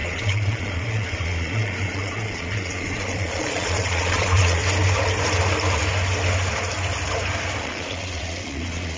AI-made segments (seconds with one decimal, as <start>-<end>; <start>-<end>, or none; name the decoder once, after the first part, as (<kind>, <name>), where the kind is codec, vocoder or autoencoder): 0.0-4.6 (vocoder, Vocos); 7.6-9.0